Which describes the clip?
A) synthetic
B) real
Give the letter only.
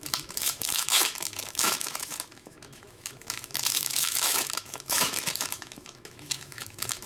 A